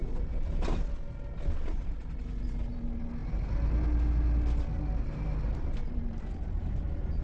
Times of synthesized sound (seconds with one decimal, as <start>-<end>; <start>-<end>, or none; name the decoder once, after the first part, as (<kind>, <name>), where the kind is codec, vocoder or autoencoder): none